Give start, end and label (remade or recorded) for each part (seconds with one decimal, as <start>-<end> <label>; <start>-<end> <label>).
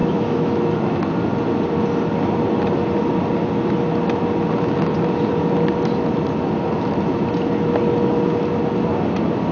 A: 0.0-1.0 remade; 1.0-9.5 recorded